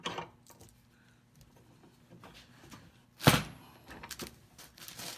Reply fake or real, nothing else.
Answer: real